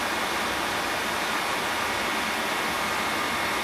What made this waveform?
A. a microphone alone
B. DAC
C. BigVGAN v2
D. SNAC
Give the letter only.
A